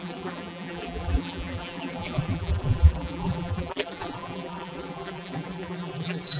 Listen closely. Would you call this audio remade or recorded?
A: remade